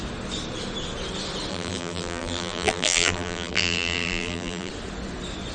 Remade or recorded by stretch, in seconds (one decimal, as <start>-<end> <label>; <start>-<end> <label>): 0.0-1.5 recorded; 1.5-4.7 remade; 4.7-5.5 recorded